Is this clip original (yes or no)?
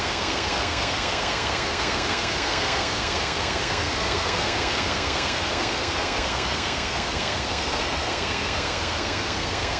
no